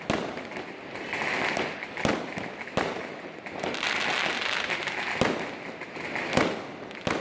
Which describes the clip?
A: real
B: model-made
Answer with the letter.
A